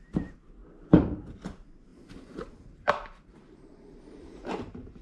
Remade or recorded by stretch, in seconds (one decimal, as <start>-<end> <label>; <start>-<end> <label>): 0.0-1.9 recorded; 1.9-5.0 remade